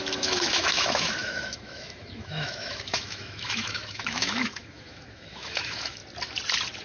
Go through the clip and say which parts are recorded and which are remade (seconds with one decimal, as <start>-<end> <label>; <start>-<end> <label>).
0.0-6.0 remade; 6.0-6.8 recorded